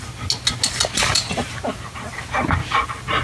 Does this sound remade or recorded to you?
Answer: recorded